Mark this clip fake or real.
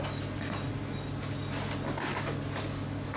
real